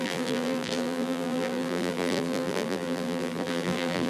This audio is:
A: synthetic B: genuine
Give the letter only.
A